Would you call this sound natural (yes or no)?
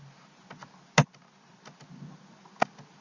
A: yes